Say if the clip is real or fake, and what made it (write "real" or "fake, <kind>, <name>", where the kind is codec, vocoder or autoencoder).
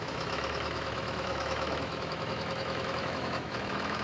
fake, autoencoder, DAC-VAE